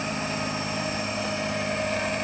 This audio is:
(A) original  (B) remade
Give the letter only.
A